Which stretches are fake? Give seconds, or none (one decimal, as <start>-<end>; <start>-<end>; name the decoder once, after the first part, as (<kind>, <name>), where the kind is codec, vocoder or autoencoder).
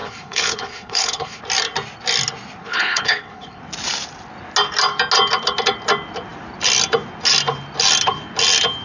0.0-1.4 (codec, HILCodec); 2.6-3.6